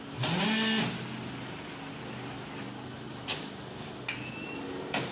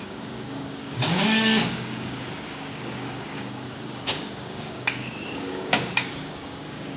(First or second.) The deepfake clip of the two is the second